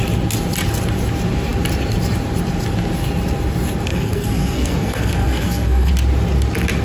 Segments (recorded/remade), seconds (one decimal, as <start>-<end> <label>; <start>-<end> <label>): 0.0-3.9 recorded; 3.9-5.9 remade; 5.9-6.8 recorded